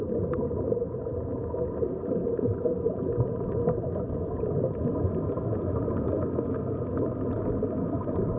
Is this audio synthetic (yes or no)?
no